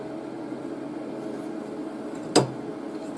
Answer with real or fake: real